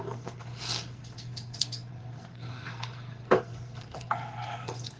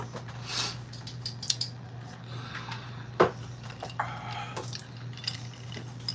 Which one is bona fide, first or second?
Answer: second